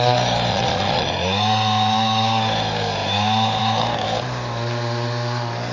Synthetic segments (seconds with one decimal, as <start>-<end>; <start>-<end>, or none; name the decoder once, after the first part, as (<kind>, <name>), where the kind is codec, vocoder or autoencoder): 0.5-1.1 (vocoder, Vocos)